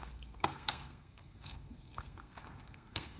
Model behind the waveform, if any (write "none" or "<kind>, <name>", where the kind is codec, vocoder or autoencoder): codec, SNAC